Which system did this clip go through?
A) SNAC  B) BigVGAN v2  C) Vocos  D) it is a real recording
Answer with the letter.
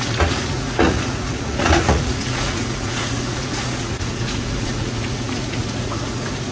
C